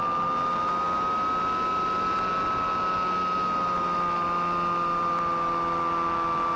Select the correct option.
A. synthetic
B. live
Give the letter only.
B